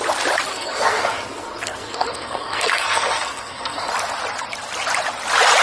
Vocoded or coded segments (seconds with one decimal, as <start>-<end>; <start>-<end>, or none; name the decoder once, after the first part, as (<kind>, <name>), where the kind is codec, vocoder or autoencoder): 0.5-3.9 (codec, SNAC)